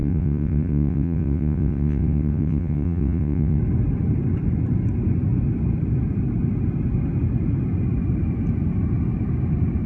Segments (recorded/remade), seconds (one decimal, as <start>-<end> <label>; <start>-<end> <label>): 0.0-3.6 remade; 3.6-9.9 recorded